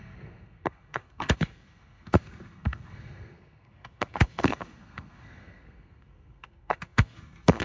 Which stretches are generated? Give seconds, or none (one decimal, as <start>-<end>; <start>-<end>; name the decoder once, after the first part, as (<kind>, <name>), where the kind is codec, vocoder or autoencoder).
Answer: 0.0-7.6 (codec, SNAC)

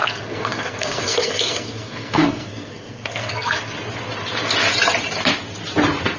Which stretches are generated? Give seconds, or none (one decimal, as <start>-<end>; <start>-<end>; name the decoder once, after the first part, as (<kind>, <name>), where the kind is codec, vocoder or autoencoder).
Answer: 0.0-3.7 (codec, SNAC)

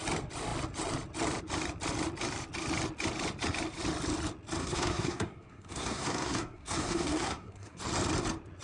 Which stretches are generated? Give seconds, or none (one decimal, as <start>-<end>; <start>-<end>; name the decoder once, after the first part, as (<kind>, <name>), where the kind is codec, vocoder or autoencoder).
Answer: 4.6-7.8 (codec, SNAC)

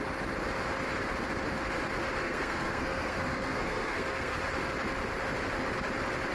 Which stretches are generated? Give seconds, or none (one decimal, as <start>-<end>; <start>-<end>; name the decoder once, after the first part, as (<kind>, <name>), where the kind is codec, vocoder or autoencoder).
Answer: 2.2-4.4 (codec, SNAC)

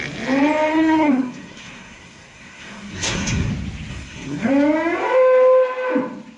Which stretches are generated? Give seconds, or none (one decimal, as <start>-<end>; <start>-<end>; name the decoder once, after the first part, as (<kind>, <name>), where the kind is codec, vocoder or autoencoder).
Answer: 0.7-3.5 (codec, SNAC); 3.9-4.5